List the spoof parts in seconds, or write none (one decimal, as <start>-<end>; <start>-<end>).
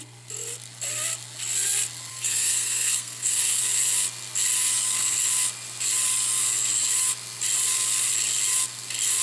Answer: 2.1-3.6